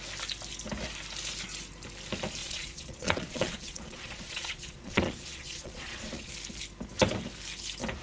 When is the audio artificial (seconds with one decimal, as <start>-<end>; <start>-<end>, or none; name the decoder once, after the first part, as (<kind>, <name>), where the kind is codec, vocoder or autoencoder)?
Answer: 2.4-6.3 (vocoder, Vocos)